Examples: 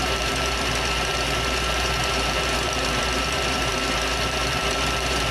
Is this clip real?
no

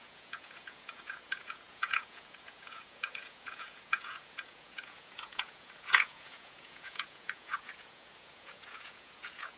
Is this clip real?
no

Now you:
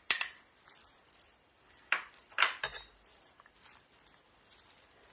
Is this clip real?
yes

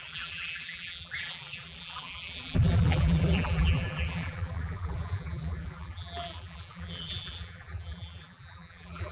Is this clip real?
no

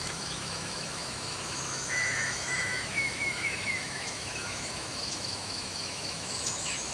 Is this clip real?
no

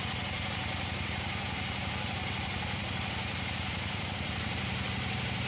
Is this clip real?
no